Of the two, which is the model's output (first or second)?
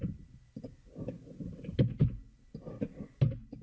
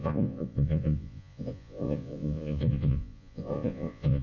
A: second